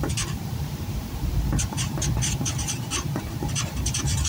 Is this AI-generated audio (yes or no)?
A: yes